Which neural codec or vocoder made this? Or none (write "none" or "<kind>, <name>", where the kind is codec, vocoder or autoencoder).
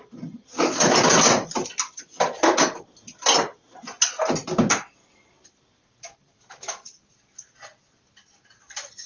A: none